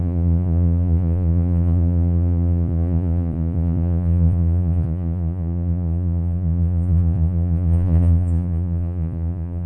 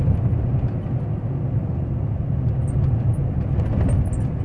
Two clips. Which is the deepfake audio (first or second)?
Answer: first